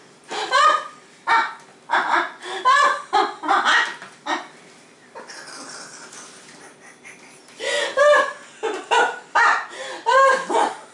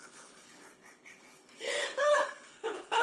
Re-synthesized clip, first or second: second